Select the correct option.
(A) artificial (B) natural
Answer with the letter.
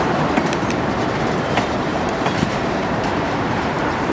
A